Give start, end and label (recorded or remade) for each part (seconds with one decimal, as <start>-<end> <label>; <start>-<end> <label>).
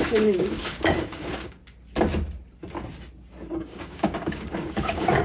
0.0-1.6 remade; 1.6-3.5 recorded; 3.5-5.2 remade